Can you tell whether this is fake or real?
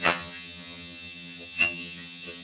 fake